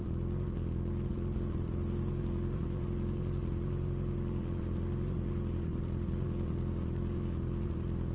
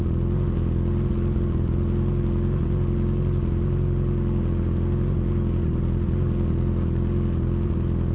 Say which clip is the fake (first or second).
first